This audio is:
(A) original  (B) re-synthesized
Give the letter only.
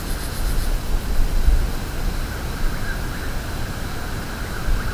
A